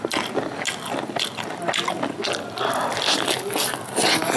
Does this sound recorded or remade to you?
recorded